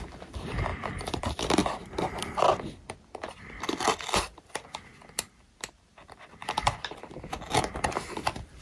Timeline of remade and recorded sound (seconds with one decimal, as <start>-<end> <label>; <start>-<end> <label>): 0.0-8.6 remade